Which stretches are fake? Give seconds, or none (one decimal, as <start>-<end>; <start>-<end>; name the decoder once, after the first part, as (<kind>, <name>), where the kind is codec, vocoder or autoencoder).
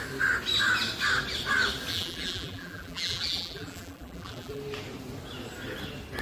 1.9-4.6 (vocoder, BigVGAN v2)